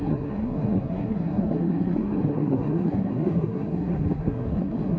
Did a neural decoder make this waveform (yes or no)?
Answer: yes